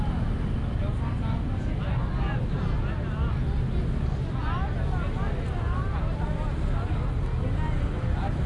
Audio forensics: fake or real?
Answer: real